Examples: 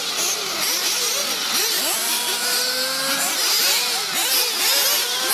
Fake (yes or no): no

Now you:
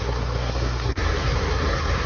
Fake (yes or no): yes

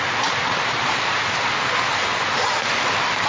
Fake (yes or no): no